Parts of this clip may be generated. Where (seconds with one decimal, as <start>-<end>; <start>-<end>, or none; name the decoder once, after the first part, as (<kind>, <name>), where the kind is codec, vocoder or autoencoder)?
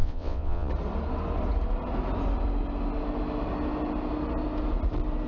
0.0-0.7 (vocoder, WaveNeXt)